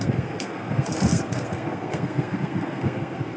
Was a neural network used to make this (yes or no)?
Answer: yes